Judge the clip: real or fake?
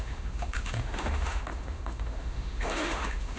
fake